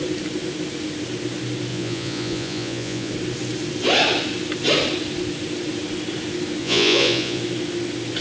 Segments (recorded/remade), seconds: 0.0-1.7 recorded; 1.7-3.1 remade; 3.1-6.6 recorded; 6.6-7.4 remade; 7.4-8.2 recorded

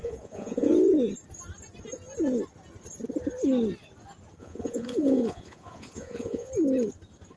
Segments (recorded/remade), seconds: 0.0-0.7 remade; 0.7-4.4 recorded; 4.4-6.5 remade; 6.5-7.4 recorded

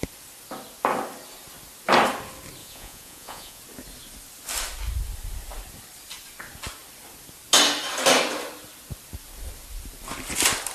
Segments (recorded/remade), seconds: 0.0-2.6 recorded; 2.6-3.6 remade; 3.6-10.7 recorded

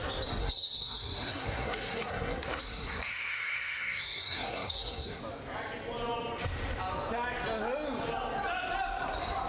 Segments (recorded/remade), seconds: 0.0-0.4 recorded; 0.4-5.2 remade; 5.2-9.5 recorded

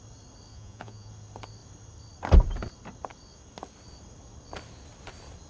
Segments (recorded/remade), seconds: 0.0-0.5 recorded; 0.5-1.1 remade; 1.1-5.5 recorded

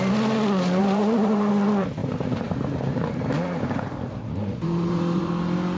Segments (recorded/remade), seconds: 0.0-0.8 recorded; 0.8-1.5 remade; 1.5-2.0 recorded; 2.0-5.3 remade; 5.3-5.8 recorded

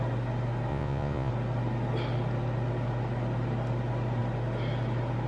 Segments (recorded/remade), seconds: 0.0-0.7 recorded; 0.7-1.3 remade; 1.3-5.3 recorded

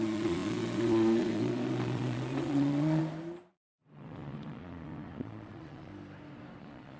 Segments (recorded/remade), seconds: 0.0-3.0 remade; 3.0-3.5 recorded; 3.5-5.9 remade; 5.9-6.6 recorded; 6.6-7.0 remade